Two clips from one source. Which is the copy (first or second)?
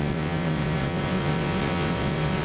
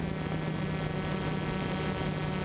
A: first